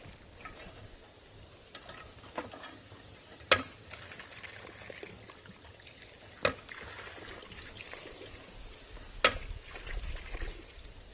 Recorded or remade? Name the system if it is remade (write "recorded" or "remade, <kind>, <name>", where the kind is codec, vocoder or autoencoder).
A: recorded